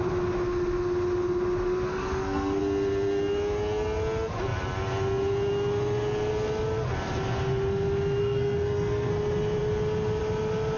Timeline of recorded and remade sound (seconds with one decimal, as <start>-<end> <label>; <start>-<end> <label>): 0.0-1.9 recorded; 1.9-2.6 remade; 2.6-8.2 recorded; 8.2-9.1 remade; 9.1-10.8 recorded